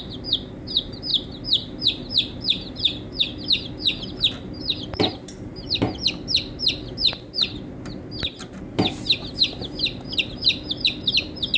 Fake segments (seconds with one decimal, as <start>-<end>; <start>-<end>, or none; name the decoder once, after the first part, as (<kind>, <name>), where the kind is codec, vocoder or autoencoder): none